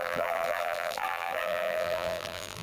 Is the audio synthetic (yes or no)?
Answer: yes